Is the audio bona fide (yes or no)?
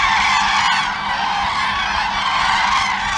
yes